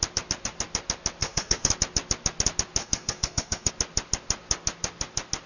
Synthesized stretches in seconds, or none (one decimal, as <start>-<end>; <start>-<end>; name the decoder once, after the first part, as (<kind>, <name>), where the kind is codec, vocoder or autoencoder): 1.2-1.7 (codec, SNAC); 2.8-3.7